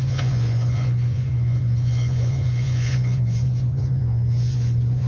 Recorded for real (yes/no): no